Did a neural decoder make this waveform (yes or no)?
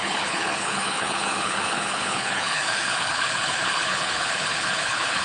yes